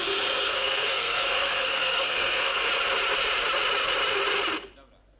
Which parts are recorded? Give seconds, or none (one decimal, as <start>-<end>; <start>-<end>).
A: 0.0-0.4; 2.7-5.2